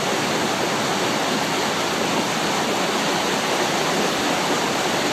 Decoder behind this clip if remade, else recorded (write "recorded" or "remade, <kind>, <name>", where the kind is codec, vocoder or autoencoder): recorded